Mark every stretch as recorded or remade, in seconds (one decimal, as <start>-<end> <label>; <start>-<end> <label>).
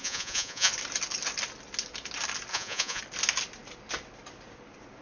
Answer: 0.0-0.7 remade; 0.7-2.5 recorded; 2.5-3.0 remade; 3.0-5.0 recorded